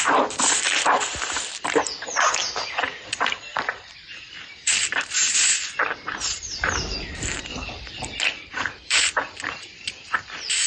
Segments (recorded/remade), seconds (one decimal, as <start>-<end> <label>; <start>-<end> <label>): 0.0-7.5 remade; 7.5-8.2 recorded; 8.2-10.7 remade